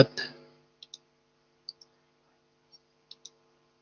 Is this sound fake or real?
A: real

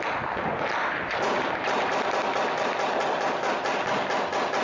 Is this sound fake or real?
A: real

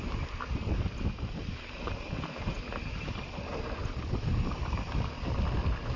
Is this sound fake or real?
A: real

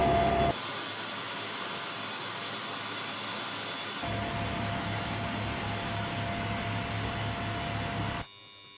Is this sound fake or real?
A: real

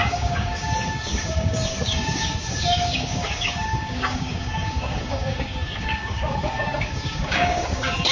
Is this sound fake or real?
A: fake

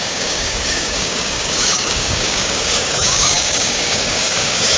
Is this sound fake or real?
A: fake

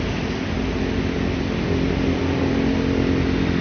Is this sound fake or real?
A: real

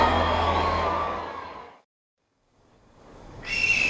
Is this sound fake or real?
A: fake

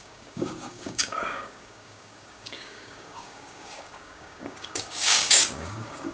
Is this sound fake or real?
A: fake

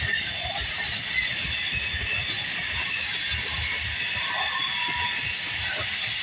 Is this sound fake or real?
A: real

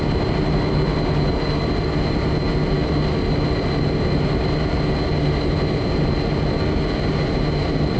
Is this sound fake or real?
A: real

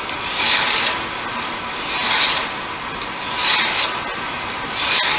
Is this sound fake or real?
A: real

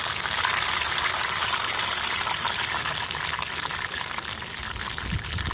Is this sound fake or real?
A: real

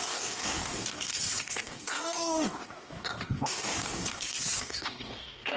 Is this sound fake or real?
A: fake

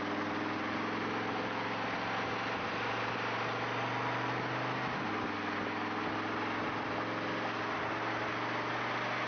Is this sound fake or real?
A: real